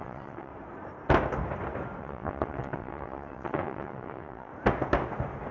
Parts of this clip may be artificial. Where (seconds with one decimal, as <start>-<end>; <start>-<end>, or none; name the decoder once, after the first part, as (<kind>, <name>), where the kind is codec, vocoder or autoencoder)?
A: 0.0-0.5 (vocoder, WaveNeXt); 2.0-4.5